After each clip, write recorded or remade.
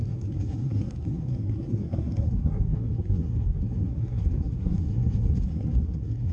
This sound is remade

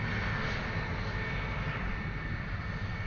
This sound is recorded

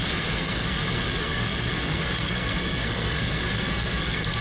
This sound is remade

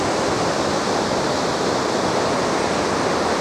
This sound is recorded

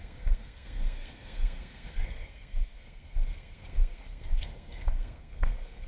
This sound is remade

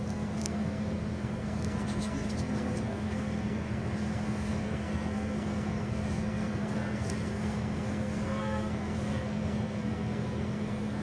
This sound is remade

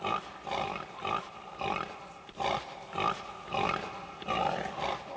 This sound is recorded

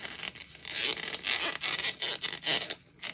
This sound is recorded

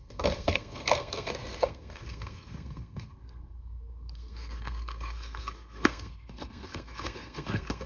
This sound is remade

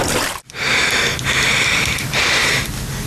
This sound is recorded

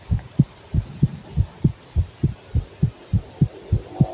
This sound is recorded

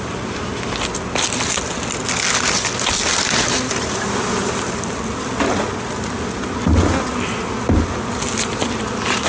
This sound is recorded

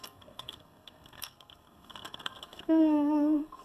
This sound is remade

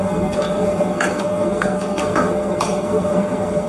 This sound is remade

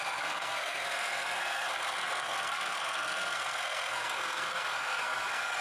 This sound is remade